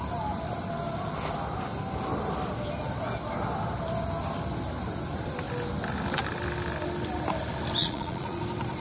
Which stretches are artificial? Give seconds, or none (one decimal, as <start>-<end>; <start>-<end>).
7.8-8.4